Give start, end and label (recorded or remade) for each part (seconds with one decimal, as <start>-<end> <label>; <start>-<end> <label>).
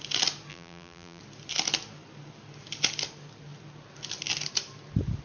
0.0-0.5 recorded; 0.5-1.2 remade; 1.2-5.2 recorded